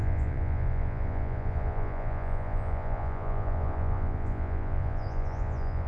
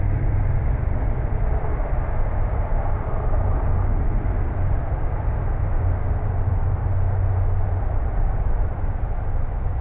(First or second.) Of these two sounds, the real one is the second